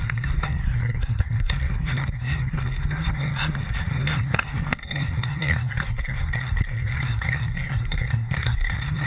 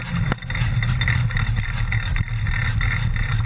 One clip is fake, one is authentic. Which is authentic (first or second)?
second